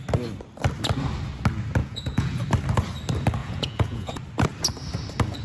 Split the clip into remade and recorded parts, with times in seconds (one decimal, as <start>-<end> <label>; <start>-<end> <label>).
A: 0.0-1.8 recorded; 1.8-2.4 remade; 2.4-3.4 recorded; 3.4-4.1 remade; 4.1-5.4 recorded